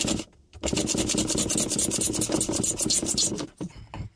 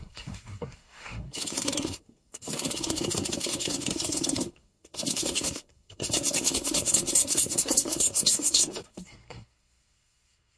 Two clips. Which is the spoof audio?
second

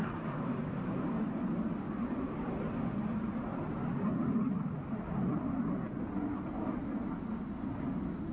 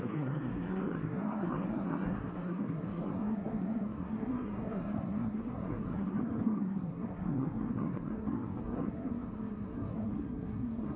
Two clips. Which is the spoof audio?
second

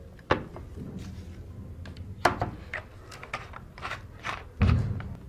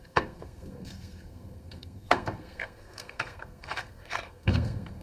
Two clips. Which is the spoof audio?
second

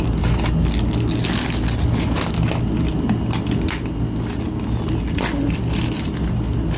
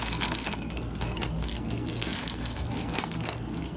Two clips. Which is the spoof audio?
second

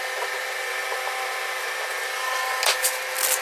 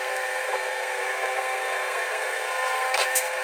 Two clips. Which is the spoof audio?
second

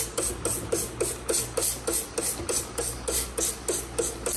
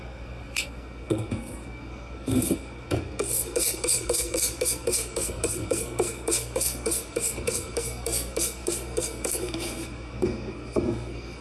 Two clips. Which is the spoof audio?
second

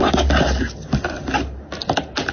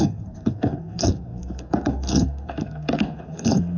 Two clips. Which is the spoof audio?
second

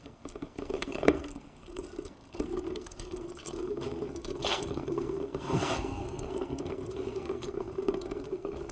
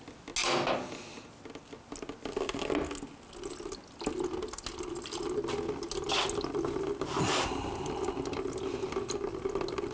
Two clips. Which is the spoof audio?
first